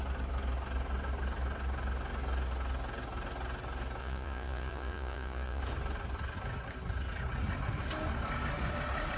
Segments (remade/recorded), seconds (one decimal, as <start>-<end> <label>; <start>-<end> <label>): 0.0-4.0 recorded; 4.0-5.6 remade; 5.6-9.2 recorded